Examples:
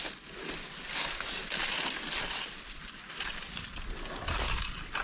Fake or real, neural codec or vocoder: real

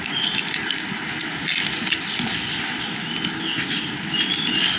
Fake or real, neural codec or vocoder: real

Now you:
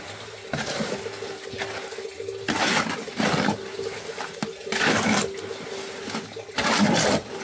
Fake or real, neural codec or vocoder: real